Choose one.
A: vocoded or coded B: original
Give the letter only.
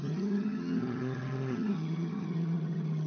A